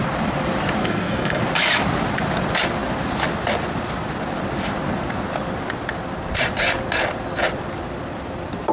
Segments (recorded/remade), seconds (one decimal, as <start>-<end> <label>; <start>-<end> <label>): 0.0-0.8 recorded; 0.8-1.4 remade; 1.4-8.7 recorded